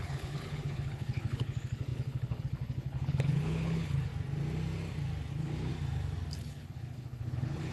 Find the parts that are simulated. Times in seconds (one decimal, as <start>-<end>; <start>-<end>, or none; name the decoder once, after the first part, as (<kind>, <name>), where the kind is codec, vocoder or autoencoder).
0.0-4.1 (codec, HILCodec); 5.3-5.7; 6.4-7.7